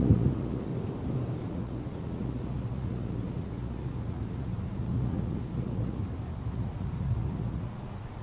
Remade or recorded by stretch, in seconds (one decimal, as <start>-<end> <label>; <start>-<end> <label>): 0.0-0.7 remade; 0.7-1.4 recorded; 1.4-6.0 remade; 6.0-6.5 recorded; 6.5-8.2 remade